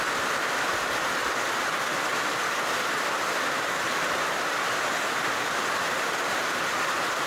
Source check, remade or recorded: remade